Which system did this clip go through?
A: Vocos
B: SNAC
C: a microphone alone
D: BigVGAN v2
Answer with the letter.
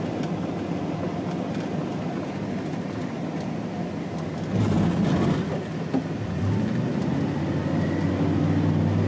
C